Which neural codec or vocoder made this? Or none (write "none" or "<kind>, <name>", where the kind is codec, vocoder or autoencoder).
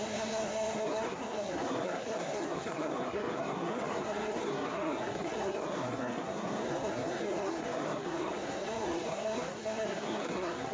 codec, SNAC